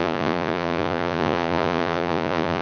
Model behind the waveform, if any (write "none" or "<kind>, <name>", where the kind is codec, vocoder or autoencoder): vocoder, Vocos